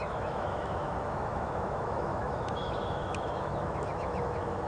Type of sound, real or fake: fake